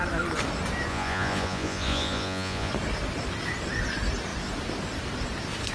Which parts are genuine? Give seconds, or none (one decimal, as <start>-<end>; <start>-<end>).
0.0-0.9; 2.7-5.7